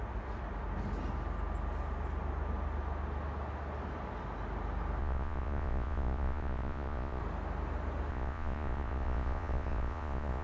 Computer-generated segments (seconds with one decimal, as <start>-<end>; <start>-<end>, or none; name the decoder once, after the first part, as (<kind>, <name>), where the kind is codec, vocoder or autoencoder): 5.0-7.2 (vocoder, Vocos); 8.1-10.4